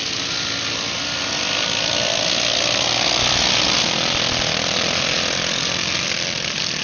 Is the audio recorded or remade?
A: recorded